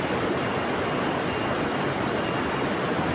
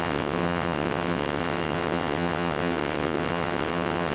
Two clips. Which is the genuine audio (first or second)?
first